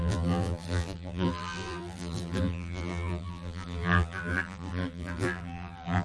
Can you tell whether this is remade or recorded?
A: remade